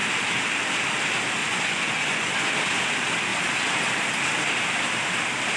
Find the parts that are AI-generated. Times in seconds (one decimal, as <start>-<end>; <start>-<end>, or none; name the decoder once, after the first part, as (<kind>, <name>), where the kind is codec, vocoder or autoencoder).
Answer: 1.4-2.3 (vocoder, Vocos)